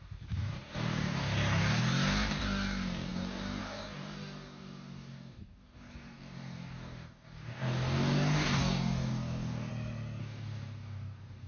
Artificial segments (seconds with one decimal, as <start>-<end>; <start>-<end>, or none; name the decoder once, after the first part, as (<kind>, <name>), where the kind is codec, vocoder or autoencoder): 0.0-9.7 (codec, DAC); 10.2-11.5